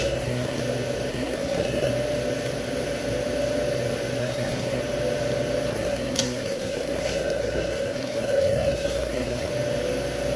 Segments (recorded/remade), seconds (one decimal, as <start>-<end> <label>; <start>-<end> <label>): 0.0-0.6 remade; 0.6-1.1 recorded; 1.1-1.9 remade; 1.9-4.2 recorded; 4.2-4.8 remade; 4.8-5.7 recorded; 5.7-9.5 remade; 9.5-10.4 recorded